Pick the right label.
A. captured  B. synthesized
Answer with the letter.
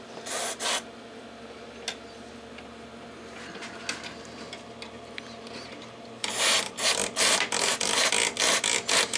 A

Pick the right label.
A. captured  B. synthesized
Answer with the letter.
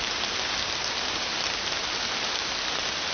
A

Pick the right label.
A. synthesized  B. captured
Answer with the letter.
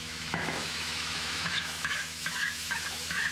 A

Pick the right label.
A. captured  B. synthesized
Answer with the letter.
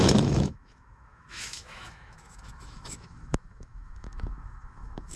B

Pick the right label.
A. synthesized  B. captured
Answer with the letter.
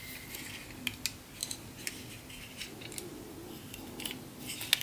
B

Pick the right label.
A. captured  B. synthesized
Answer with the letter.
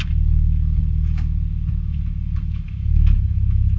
B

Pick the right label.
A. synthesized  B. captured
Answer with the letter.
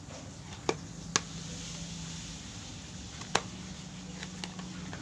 B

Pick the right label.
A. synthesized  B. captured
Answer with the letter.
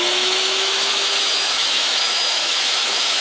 A